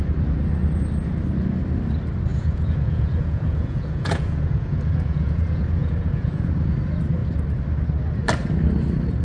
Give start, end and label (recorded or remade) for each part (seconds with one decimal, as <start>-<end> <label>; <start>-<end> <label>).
0.0-2.3 recorded; 2.3-6.5 remade; 6.5-9.2 recorded